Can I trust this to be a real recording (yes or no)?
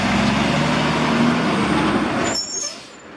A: yes